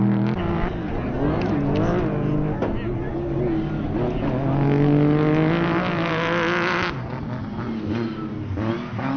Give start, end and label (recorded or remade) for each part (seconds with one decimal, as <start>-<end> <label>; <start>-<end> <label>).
0.0-9.2 recorded